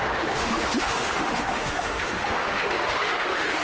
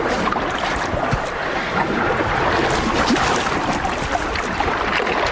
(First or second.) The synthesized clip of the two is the first